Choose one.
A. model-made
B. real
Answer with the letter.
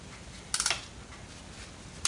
B